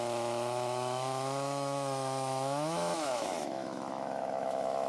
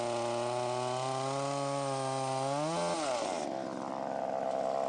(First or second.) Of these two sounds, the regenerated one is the first